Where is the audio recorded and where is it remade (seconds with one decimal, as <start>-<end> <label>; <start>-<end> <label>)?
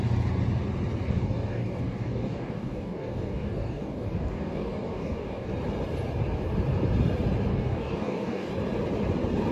0.0-1.1 recorded; 1.1-5.5 remade; 5.5-7.5 recorded; 7.5-8.5 remade; 8.5-9.5 recorded